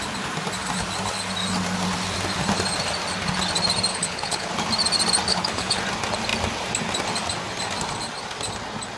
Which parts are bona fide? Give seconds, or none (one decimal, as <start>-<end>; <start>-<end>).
0.0-3.9; 4.5-5.3; 5.8-9.0